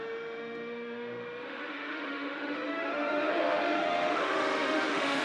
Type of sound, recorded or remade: remade